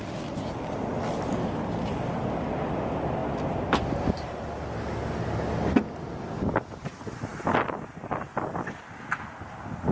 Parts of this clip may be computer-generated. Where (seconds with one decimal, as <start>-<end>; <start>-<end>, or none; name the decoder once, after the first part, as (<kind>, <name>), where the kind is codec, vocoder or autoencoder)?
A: none